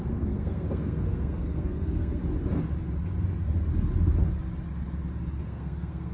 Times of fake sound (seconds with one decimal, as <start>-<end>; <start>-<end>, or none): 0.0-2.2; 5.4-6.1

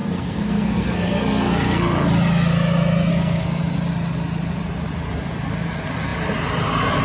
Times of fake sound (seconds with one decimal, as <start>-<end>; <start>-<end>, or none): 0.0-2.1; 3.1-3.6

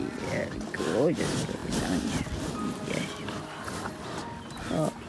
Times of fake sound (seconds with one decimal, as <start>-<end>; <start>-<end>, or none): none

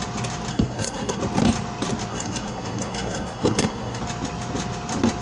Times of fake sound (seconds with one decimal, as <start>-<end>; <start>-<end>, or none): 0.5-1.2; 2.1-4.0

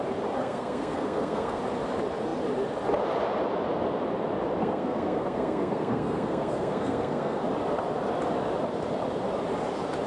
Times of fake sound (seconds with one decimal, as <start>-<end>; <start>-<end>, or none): 0.4-1.6; 4.6-7.4

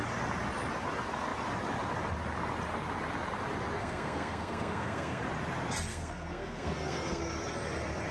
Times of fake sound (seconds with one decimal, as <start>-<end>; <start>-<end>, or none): 3.8-5.2; 5.9-7.2

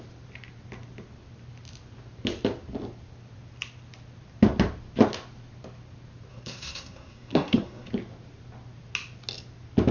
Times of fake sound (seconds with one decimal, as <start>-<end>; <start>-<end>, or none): 6.3-7.9